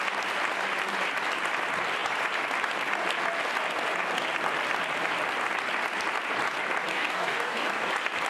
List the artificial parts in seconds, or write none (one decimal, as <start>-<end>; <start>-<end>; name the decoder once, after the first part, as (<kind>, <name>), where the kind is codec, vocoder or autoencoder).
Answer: 6.9-7.9 (codec, DAC)